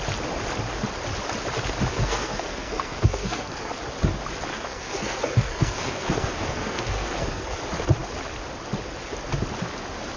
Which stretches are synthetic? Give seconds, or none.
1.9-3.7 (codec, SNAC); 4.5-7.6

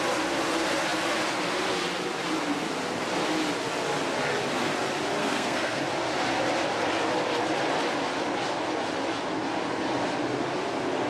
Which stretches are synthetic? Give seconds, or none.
5.2-5.8 (codec, SNAC)

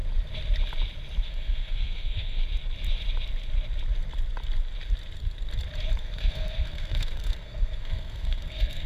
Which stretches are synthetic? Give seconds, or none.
1.2-2.4 (codec, SNAC); 6.0-8.9

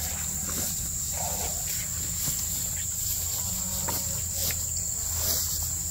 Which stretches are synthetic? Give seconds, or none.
none

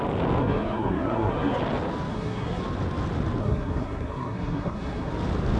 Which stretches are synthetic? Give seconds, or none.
0.4-1.6 (codec, SNAC); 2.1-2.6; 3.4-5.1

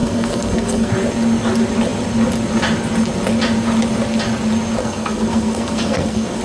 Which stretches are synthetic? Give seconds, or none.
0.0-0.9 (codec, SNAC); 4.8-6.4

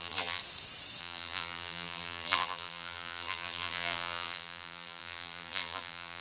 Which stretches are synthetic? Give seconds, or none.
0.0-0.4 (vocoder, BigVGAN v2); 1.0-6.2